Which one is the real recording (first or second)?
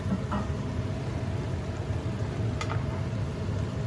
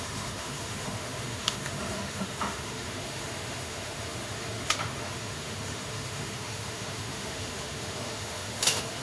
first